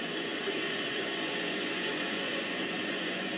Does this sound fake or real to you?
fake